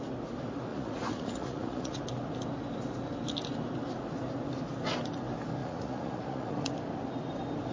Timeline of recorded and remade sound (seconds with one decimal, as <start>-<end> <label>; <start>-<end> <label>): 0.0-0.7 recorded; 0.7-2.0 remade; 2.0-5.6 recorded; 5.6-6.7 remade; 6.7-7.7 recorded